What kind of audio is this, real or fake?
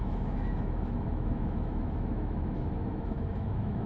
fake